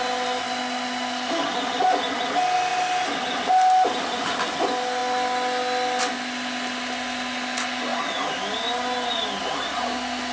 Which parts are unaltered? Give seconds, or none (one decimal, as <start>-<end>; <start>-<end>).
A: 0.0-10.3